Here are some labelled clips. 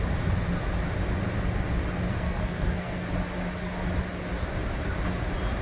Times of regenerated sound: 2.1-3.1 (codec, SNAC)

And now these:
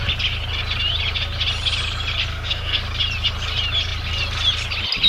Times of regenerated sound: 2.3-2.8 (codec, SNAC)